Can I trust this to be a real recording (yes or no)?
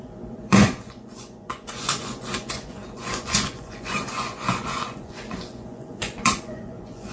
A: no